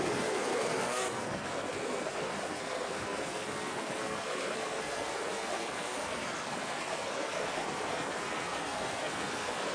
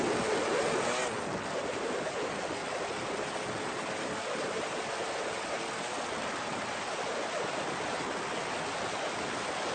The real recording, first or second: second